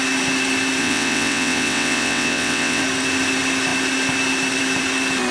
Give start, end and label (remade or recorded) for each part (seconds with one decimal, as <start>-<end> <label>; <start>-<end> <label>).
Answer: 0.0-0.8 recorded; 0.8-2.8 remade; 2.8-5.3 recorded